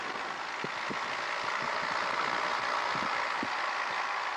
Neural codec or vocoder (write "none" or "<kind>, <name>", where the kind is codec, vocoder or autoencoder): none